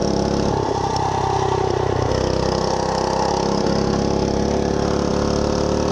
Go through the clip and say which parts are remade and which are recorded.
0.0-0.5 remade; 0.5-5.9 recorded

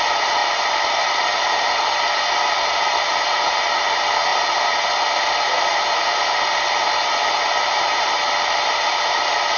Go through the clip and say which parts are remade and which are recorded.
0.0-9.6 recorded

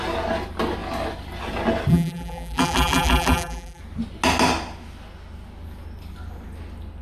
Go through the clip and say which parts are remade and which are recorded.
0.0-1.9 recorded; 1.9-3.8 remade; 3.8-7.0 recorded

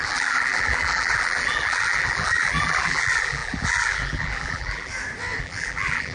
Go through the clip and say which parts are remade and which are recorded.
0.0-4.9 remade; 4.9-5.4 recorded; 5.4-6.1 remade

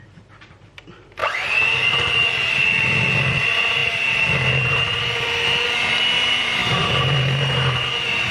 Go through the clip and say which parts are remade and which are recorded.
0.0-8.3 remade

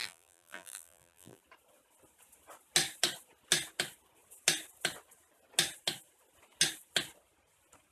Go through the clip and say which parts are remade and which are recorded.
0.0-1.4 remade; 1.4-7.9 recorded

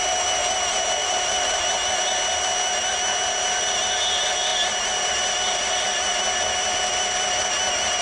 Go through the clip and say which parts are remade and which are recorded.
0.0-1.0 recorded; 1.0-1.7 remade; 1.7-5.6 recorded; 5.6-6.2 remade; 6.2-8.0 recorded

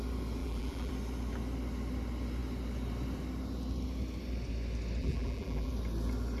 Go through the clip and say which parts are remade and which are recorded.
0.0-0.4 recorded; 0.4-0.9 remade; 0.9-5.0 recorded; 5.0-5.7 remade; 5.7-6.4 recorded